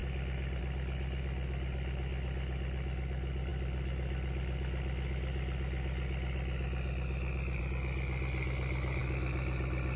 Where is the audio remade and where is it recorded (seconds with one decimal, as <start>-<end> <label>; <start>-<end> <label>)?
0.0-10.0 recorded